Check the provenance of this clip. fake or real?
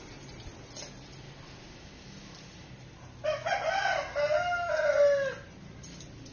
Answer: real